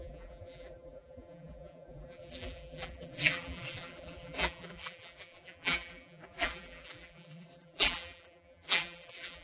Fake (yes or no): yes